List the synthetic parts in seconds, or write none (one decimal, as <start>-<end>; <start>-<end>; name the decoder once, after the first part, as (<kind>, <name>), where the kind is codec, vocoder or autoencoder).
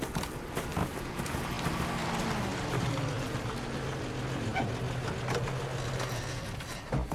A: 0.8-1.5 (vocoder, Vocos)